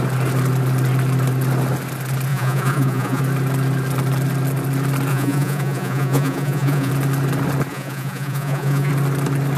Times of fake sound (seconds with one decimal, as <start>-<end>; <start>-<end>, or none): 2.3-3.2; 5.1-6.9; 7.7-8.9